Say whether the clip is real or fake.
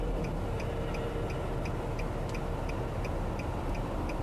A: real